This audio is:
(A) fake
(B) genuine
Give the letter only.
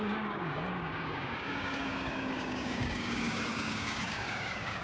A